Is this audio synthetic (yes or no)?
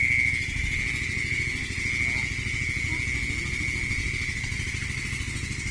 no